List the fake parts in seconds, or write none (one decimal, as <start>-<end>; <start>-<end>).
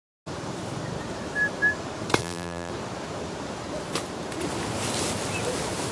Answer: 2.2-2.7